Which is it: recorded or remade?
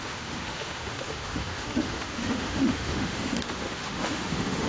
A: remade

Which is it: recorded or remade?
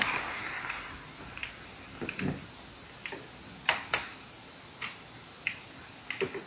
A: recorded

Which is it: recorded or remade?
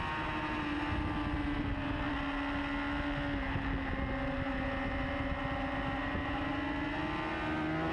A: recorded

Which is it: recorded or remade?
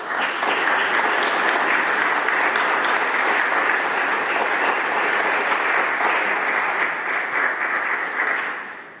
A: recorded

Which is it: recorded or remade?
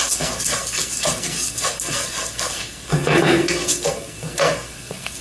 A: remade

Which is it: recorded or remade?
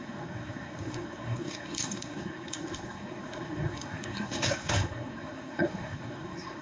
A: remade